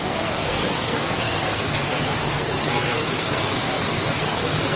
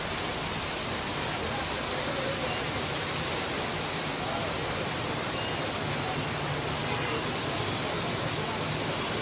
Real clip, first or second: second